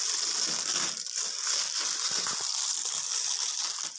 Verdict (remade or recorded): recorded